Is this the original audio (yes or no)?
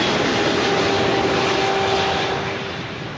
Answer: yes